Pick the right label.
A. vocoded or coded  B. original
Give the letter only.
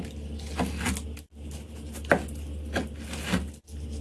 B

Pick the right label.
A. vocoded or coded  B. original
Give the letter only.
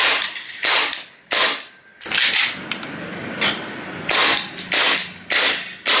B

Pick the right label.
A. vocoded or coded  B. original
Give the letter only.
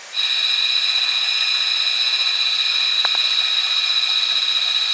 B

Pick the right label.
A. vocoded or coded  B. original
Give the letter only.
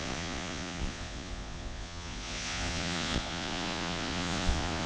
A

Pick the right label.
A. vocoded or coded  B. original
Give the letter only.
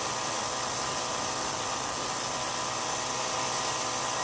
B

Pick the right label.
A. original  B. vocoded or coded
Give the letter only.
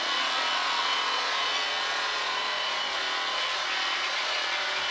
B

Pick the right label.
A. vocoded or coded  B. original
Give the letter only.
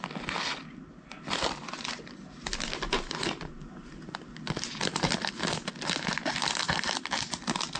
B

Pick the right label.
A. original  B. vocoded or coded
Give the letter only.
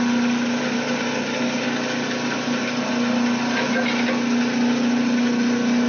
A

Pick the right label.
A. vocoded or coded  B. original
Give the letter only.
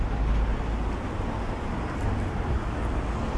B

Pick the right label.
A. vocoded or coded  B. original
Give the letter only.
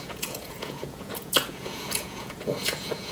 A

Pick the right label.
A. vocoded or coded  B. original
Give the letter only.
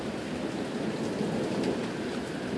B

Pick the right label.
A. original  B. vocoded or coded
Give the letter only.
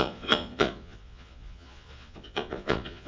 B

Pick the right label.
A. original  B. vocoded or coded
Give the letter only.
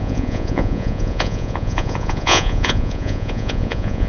B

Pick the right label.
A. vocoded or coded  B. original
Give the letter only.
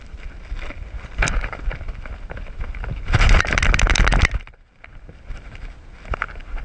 B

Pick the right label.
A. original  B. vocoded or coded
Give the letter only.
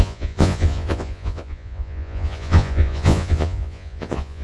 B